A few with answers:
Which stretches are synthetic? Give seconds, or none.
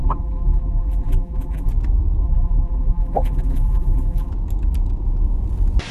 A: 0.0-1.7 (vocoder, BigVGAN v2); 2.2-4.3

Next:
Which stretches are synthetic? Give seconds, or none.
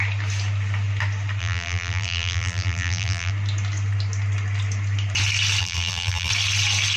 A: 1.4-3.3 (vocoder, BigVGAN v2); 5.6-6.3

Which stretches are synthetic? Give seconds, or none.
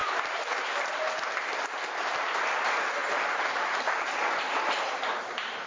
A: 2.0-3.0 (vocoder, BigVGAN v2); 3.9-5.7